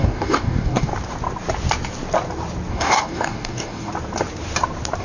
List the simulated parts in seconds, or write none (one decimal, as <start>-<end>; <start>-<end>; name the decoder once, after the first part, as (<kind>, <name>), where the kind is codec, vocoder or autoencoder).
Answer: 0.0-0.9 (codec, DAC); 2.7-3.9